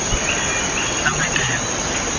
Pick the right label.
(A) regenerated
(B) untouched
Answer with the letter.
B